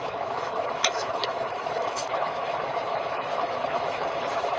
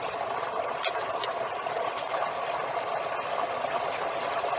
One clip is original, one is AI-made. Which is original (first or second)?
second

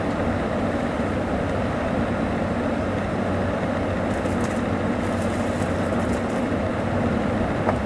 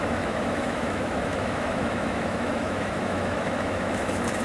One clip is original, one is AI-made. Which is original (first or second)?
first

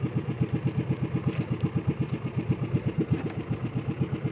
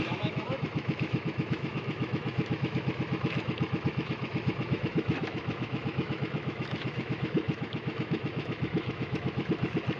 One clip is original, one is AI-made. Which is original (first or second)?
first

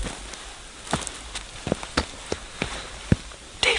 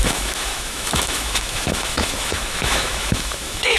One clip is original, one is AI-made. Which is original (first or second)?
first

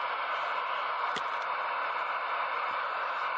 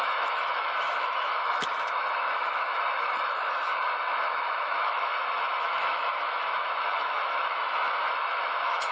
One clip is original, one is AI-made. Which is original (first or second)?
first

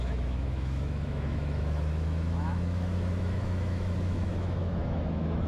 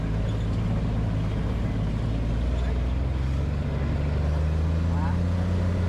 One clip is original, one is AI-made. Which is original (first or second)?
second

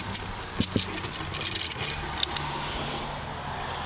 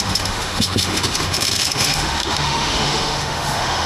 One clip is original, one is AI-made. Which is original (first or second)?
first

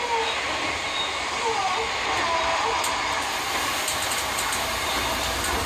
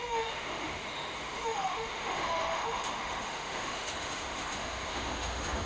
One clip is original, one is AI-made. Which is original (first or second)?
first